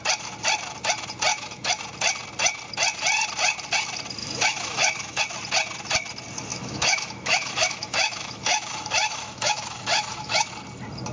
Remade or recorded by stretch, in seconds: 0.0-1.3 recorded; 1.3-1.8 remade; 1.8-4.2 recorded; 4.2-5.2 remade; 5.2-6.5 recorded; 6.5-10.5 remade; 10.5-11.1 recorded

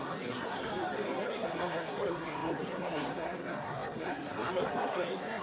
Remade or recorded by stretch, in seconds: 0.0-0.7 remade; 0.7-1.2 recorded; 1.2-5.4 remade

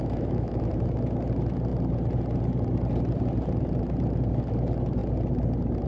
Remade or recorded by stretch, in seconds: 0.0-0.7 remade; 0.7-5.9 recorded